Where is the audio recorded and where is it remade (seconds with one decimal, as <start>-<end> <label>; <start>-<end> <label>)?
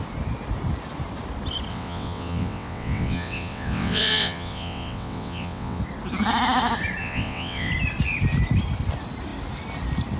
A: 0.0-1.7 recorded; 1.7-5.8 remade; 5.8-7.0 recorded; 7.0-7.7 remade; 7.7-10.2 recorded